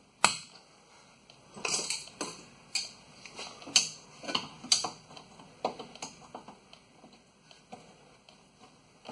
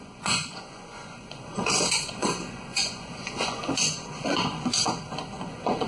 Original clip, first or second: first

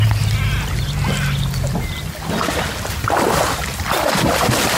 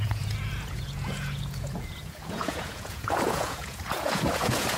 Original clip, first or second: first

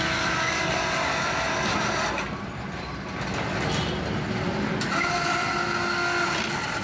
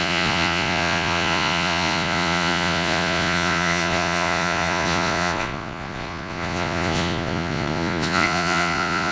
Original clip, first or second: first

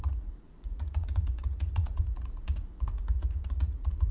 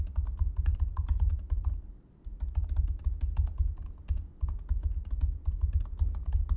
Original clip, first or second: second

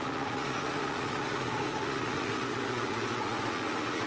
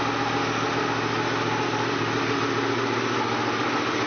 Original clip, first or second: second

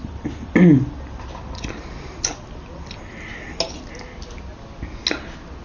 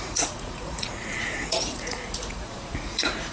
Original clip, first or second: first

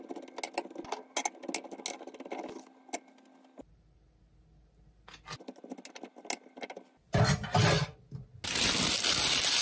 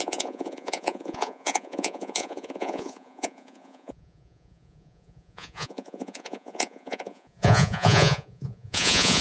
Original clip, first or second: first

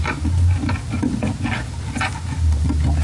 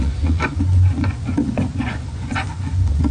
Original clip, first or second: first